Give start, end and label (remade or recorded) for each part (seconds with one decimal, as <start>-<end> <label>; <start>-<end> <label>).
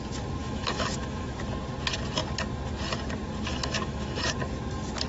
0.0-0.4 recorded; 0.4-1.4 remade; 1.4-3.5 recorded; 3.5-4.3 remade; 4.3-5.1 recorded